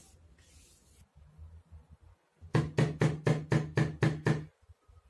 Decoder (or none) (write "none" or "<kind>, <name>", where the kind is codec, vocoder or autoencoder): none